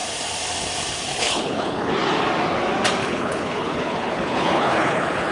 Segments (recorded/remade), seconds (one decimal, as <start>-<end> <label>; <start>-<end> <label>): 0.0-1.1 recorded; 1.1-1.9 remade; 1.9-3.0 recorded; 3.0-5.3 remade